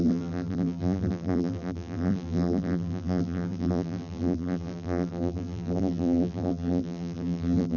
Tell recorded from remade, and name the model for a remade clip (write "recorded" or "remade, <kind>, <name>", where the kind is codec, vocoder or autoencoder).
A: remade, vocoder, BigVGAN v2